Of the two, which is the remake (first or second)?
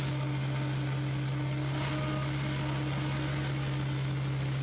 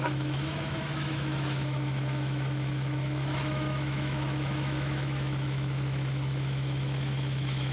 second